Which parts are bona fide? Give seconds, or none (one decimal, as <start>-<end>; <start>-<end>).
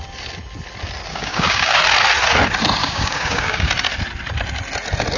0.0-1.1; 1.8-2.8; 3.7-5.2